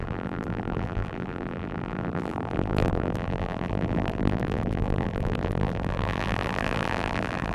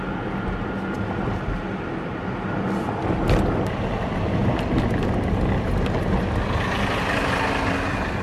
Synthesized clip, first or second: first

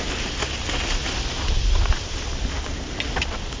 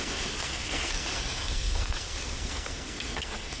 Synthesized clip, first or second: second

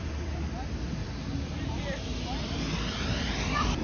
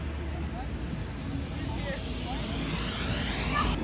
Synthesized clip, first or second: first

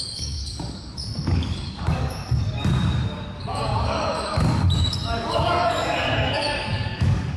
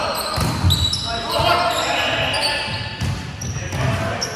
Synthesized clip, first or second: first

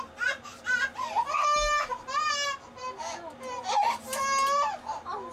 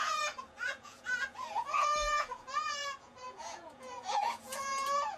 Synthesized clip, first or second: second